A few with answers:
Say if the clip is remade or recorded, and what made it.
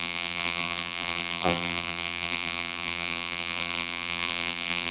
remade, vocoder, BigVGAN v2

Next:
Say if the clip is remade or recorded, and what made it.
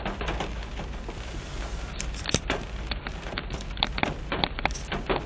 recorded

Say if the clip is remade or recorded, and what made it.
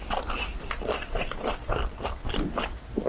recorded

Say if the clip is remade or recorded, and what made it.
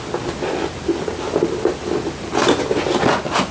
recorded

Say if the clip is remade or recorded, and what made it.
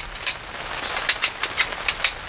recorded